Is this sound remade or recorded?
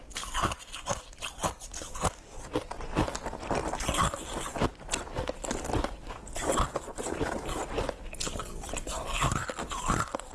recorded